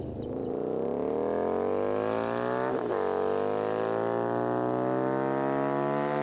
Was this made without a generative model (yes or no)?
yes